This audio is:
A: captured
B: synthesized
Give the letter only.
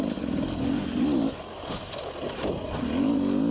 A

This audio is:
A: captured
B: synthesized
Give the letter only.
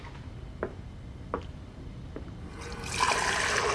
A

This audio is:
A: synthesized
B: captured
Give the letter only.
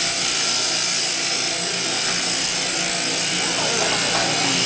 B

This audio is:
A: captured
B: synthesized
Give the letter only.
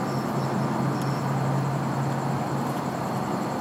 A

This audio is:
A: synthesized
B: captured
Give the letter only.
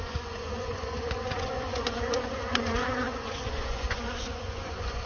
A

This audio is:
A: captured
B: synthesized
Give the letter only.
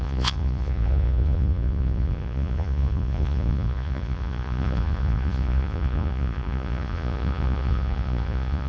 B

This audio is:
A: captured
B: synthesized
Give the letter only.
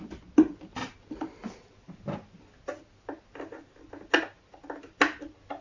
A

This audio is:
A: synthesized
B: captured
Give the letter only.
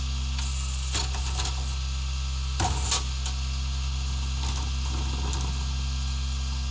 B